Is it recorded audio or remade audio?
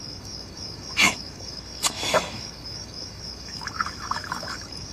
remade